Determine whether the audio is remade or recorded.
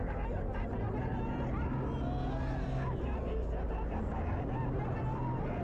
recorded